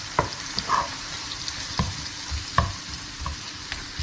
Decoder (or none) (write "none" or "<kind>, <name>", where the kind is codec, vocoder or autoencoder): none